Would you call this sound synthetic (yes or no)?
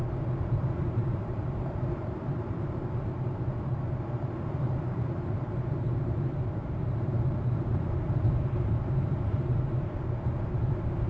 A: yes